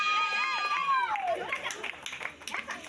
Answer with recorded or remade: recorded